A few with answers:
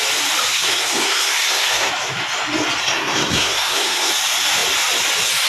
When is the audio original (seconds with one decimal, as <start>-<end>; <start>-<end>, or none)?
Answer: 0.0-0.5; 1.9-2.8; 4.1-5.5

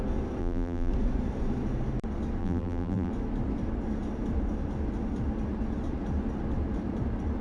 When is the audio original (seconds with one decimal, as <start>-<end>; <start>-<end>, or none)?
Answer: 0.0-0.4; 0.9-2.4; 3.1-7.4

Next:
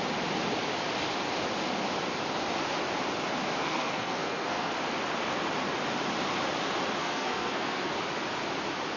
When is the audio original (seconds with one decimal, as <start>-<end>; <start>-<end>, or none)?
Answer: 0.0-3.6; 4.7-7.0; 7.9-9.0

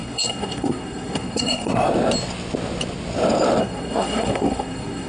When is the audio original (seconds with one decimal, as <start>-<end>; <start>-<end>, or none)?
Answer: 1.7-3.6